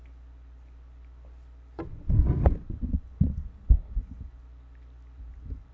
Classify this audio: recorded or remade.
recorded